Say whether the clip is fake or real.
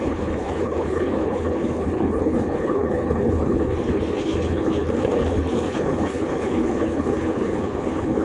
fake